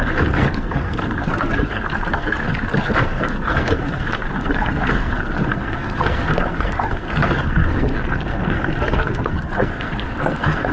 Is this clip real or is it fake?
fake